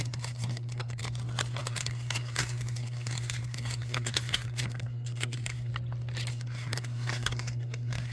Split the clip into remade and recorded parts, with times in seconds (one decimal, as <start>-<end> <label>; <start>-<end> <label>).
0.0-1.0 remade; 1.0-1.6 recorded; 1.6-5.7 remade; 5.7-6.3 recorded; 6.3-8.1 remade